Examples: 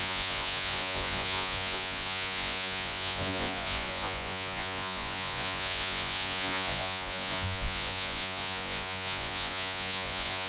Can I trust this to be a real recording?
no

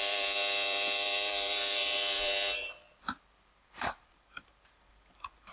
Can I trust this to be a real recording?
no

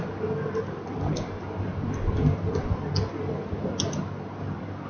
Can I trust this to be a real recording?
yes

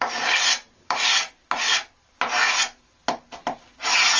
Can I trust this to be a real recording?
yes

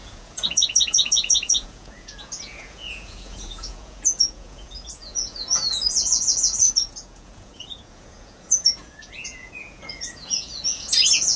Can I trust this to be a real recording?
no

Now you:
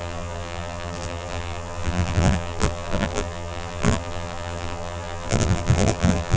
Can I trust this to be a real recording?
no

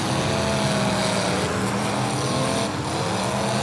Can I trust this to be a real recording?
yes